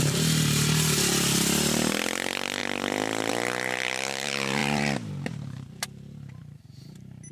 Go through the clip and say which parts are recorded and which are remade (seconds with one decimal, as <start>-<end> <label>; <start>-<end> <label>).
0.0-2.6 recorded; 2.6-3.3 remade; 3.3-4.6 recorded; 4.6-6.8 remade; 6.8-7.3 recorded